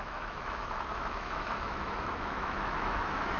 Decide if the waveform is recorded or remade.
remade